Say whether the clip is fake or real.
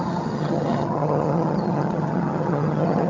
fake